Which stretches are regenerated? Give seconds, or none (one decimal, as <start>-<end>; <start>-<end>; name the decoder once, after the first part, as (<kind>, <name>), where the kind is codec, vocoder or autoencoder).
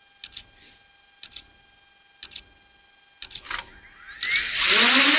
none